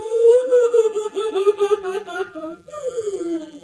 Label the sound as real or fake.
fake